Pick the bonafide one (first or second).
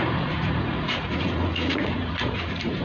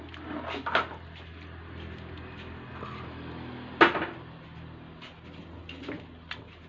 second